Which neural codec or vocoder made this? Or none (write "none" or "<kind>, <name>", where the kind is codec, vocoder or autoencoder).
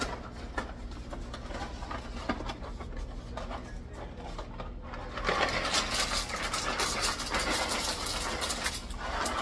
none